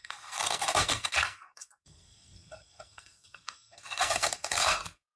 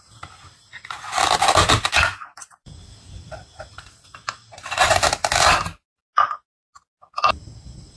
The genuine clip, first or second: second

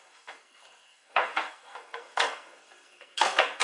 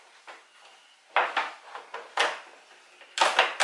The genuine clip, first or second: second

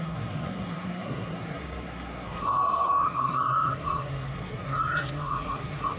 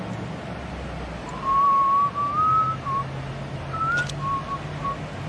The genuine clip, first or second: second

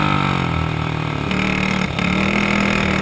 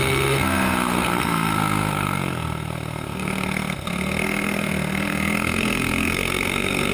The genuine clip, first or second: first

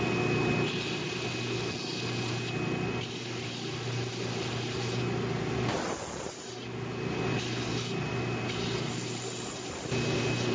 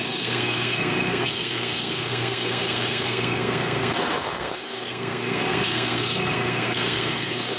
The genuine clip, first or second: first